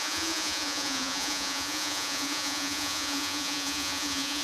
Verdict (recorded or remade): remade